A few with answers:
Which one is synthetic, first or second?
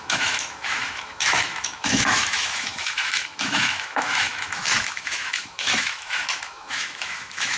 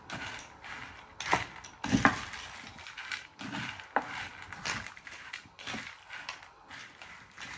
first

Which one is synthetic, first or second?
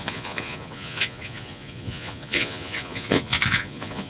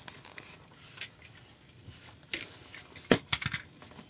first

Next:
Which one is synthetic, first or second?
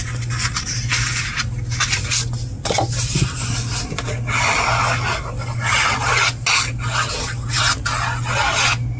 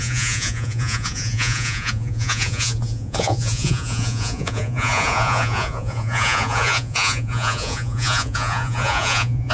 second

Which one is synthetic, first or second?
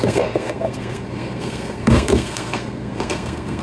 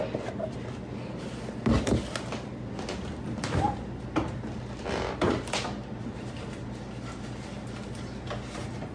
first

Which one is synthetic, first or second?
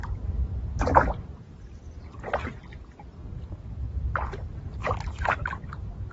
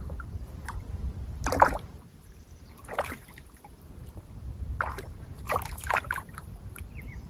second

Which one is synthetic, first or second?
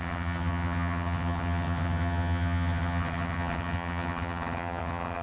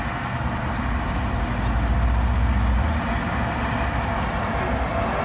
first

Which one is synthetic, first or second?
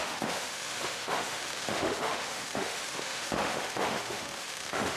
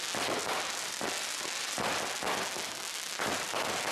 first